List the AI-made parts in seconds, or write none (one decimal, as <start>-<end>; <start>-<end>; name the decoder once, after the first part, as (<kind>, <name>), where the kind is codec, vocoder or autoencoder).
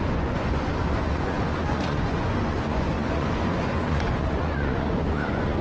0.0-5.6 (vocoder, Vocos)